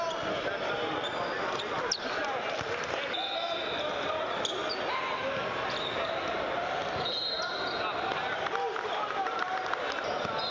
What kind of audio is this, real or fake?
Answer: real